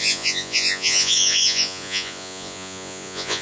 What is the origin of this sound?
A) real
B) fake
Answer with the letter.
B